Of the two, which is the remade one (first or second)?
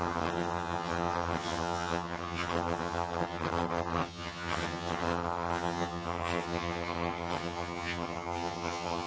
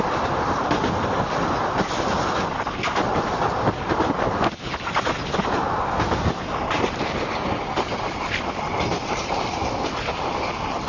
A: first